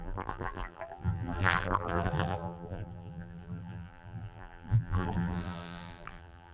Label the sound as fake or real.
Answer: fake